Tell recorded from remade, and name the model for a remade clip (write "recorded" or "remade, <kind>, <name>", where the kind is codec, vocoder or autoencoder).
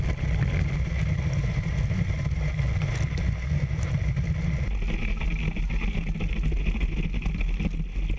recorded